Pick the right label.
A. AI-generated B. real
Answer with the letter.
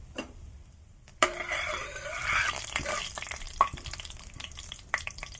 A